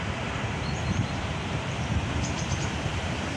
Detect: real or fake fake